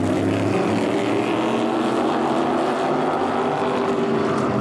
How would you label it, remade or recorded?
recorded